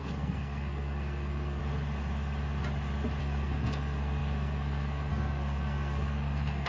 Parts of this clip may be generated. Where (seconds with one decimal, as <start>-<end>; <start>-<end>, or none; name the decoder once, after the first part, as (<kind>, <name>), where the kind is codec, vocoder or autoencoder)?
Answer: 0.0-1.6 (codec, SNAC); 3.2-6.7